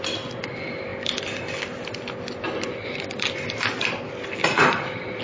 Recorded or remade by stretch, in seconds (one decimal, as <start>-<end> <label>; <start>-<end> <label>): 0.0-4.4 recorded; 4.4-5.2 remade